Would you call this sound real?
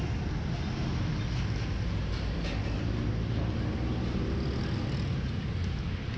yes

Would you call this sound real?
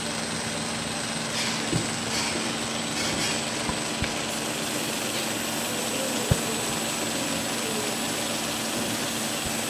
yes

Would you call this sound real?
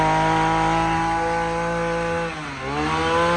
yes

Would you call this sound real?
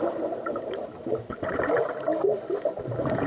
yes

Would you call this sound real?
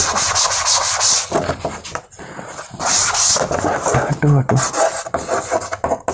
yes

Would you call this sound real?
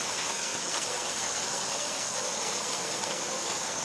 no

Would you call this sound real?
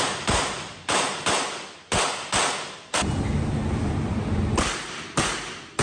yes